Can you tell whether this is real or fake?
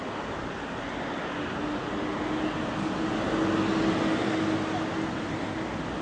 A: real